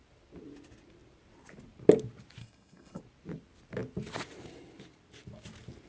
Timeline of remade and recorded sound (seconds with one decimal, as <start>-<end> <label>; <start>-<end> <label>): 0.0-2.4 recorded; 2.4-3.0 remade; 3.0-5.9 recorded